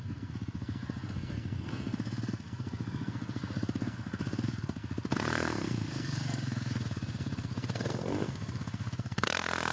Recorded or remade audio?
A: remade